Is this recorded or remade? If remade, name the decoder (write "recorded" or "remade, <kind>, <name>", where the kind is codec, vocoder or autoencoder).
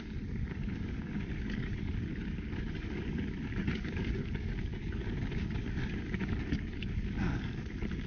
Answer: remade, codec, DAC